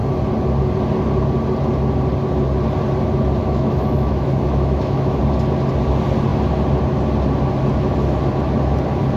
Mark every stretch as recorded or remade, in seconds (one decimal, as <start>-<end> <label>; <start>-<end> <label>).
0.0-3.4 recorded; 3.4-5.2 remade; 5.2-9.2 recorded